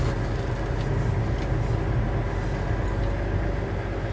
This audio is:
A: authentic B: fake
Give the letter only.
A